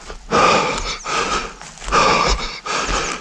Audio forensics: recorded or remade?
recorded